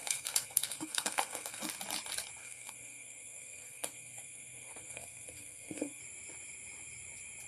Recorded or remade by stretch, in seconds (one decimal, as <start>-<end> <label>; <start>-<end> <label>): 0.0-1.6 remade; 1.6-2.4 recorded; 2.4-6.0 remade; 6.0-7.5 recorded